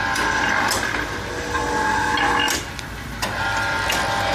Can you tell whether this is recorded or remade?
recorded